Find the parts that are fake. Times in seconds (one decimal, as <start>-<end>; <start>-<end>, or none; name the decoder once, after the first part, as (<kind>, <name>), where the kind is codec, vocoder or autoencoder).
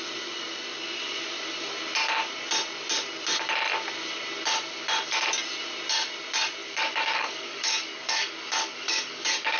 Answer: 6.6-9.6 (codec, DAC)